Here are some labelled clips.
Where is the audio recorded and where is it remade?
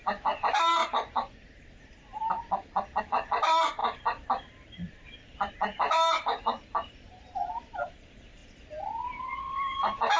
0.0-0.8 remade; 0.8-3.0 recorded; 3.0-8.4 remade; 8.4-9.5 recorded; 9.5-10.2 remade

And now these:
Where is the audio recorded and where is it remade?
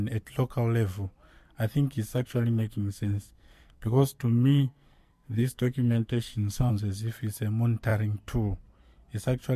0.0-2.1 recorded; 2.1-6.7 remade; 6.7-9.6 recorded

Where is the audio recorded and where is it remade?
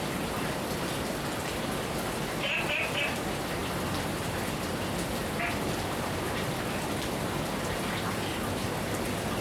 0.0-9.4 recorded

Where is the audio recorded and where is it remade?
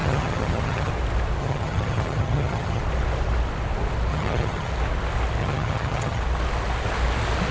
0.0-0.9 remade; 0.9-1.4 recorded; 1.4-2.8 remade; 2.8-4.1 recorded; 4.1-4.7 remade; 4.7-5.4 recorded; 5.4-6.2 remade; 6.2-7.5 recorded